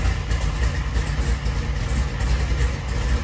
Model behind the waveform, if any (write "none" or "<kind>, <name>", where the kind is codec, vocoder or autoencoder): none